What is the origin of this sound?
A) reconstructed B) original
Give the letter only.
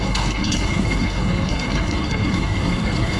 A